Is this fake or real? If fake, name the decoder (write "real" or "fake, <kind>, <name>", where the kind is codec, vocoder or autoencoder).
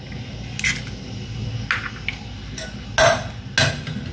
real